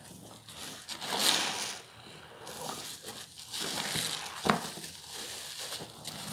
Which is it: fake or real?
real